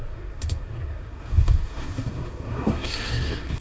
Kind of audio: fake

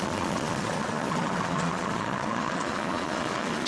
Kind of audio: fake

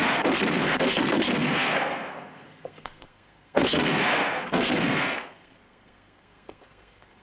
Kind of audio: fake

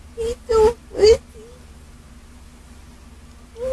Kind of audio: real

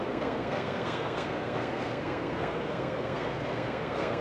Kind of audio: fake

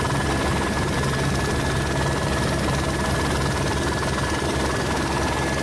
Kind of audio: real